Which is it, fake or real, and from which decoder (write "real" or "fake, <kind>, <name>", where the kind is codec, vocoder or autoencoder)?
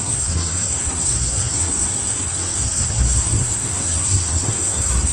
fake, codec, SNAC